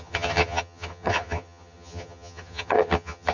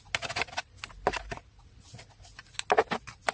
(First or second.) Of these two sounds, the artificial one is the first